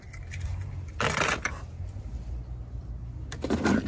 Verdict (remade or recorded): recorded